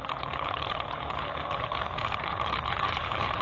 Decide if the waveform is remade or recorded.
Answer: remade